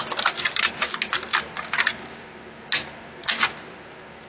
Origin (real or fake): real